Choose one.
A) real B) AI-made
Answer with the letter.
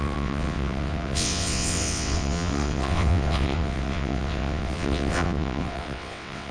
B